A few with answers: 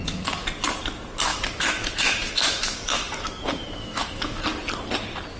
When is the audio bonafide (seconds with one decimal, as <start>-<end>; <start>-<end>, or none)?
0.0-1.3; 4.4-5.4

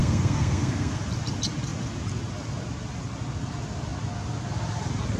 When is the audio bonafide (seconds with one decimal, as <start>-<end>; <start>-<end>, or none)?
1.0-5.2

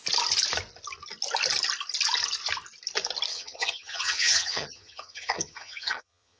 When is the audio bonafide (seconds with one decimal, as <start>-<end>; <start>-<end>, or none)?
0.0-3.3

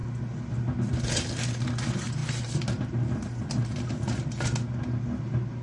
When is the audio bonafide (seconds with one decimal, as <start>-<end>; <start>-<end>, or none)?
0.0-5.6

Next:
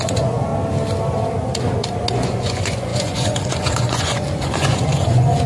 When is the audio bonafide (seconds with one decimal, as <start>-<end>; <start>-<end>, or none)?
0.5-2.1

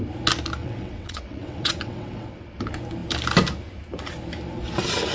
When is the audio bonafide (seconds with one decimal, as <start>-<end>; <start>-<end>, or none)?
0.0-0.6; 2.6-5.1